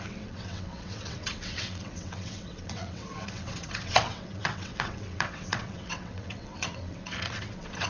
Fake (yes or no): yes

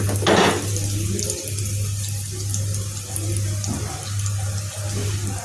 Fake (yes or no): no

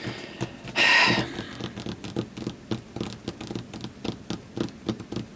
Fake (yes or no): no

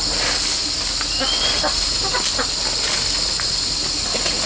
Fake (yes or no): no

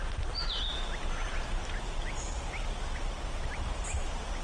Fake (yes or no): no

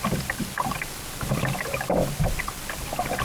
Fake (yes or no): no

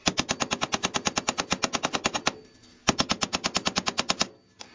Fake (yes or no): no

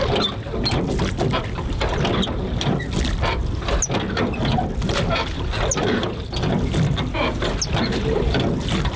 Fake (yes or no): no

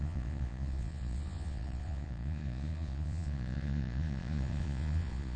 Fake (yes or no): yes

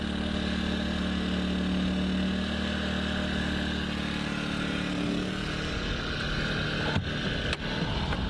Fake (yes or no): no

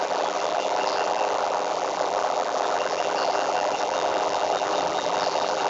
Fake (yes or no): yes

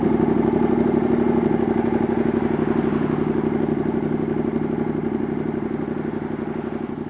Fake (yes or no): no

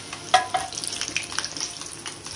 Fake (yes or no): no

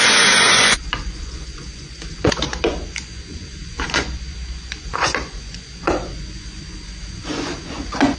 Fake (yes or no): yes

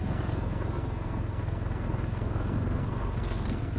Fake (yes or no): yes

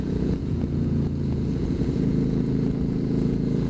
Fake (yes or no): yes